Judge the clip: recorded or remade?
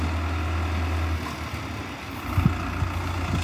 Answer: recorded